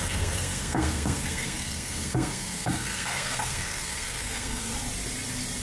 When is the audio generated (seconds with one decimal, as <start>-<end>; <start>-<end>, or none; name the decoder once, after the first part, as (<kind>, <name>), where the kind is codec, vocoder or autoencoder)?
0.0-4.7 (codec, SNAC)